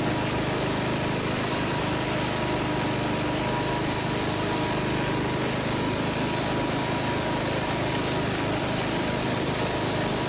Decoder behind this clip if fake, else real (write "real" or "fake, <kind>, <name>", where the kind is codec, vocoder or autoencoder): real